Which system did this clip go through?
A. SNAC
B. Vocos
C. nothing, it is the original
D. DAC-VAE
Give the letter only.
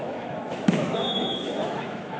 D